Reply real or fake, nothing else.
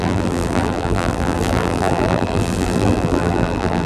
fake